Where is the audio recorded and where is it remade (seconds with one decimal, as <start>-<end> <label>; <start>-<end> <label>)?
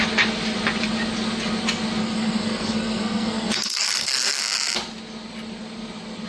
0.0-2.0 recorded; 2.0-4.4 remade; 4.4-6.3 recorded